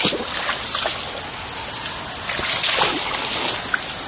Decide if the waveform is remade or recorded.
recorded